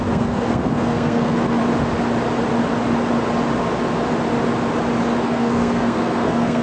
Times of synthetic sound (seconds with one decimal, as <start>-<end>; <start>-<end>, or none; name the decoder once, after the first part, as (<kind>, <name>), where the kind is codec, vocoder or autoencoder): 0.0-1.6 (codec, SNAC); 5.2-6.6